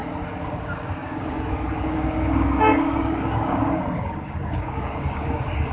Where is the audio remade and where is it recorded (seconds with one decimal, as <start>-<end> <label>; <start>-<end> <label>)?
0.0-0.5 recorded; 0.5-5.7 remade